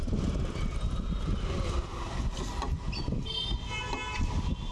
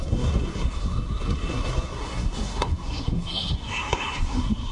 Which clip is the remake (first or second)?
second